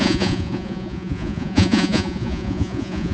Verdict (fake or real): fake